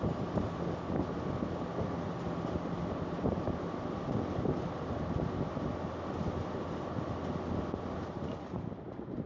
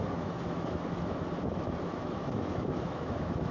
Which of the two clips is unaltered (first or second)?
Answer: first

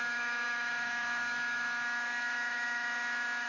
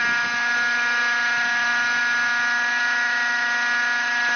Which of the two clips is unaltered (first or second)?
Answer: second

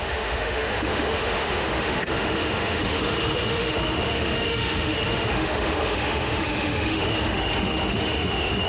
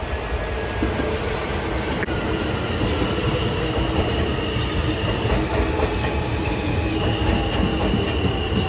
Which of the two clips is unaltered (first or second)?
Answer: second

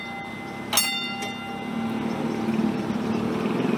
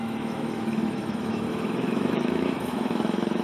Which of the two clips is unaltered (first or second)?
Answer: first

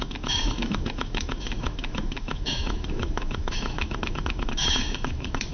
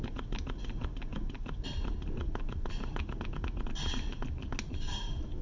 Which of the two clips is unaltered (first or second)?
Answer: second